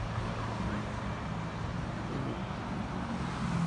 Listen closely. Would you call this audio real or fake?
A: real